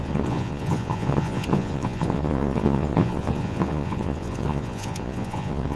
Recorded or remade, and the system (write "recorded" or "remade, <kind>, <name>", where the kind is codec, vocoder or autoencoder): remade, vocoder, Vocos